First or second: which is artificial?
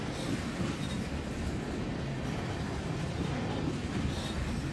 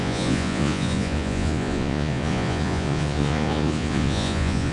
second